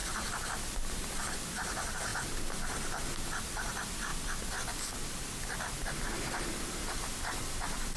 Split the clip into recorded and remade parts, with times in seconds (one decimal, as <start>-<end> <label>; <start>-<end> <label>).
0.0-0.9 recorded; 0.9-2.1 remade; 2.1-3.4 recorded; 3.4-4.1 remade; 4.1-6.1 recorded; 6.1-8.0 remade